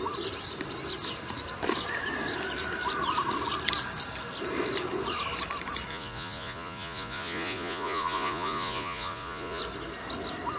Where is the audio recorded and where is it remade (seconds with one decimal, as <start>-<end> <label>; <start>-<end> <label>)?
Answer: 0.0-5.9 recorded; 5.9-9.6 remade; 9.6-10.6 recorded